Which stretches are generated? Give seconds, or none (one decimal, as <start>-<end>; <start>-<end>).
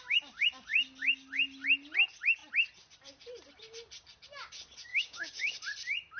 4.9-5.5